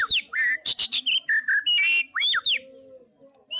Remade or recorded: recorded